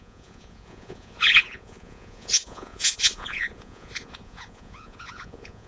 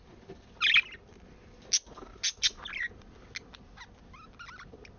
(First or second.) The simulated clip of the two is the first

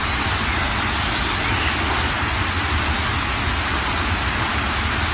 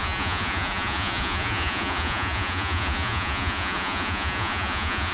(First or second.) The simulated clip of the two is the second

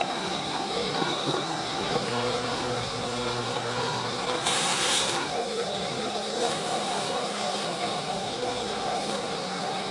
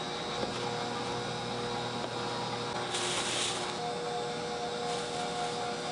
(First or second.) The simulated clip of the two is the first